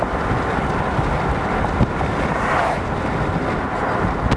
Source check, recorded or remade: recorded